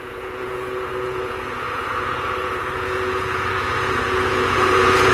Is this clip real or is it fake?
fake